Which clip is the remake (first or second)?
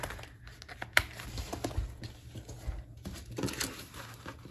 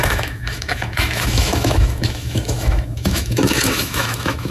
second